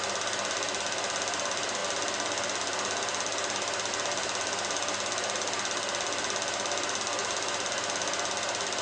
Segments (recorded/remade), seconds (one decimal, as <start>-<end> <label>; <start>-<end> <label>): 0.0-8.8 recorded